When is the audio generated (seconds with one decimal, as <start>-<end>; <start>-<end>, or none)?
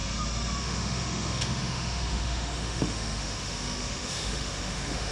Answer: 0.6-5.1